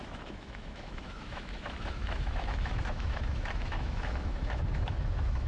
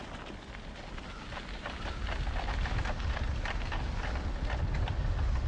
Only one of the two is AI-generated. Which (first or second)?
first